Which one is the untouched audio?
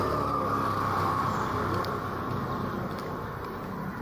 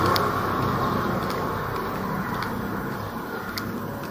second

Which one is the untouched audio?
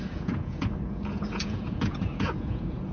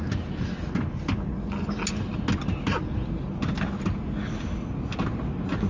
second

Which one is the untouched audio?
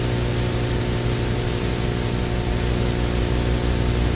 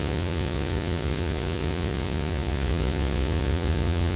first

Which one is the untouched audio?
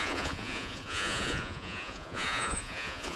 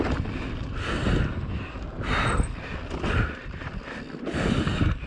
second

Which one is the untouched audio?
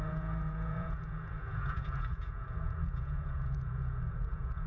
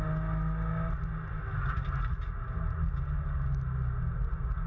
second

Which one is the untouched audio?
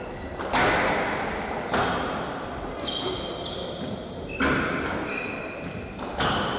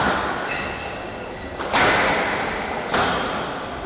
first